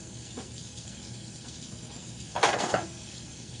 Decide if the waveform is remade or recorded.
remade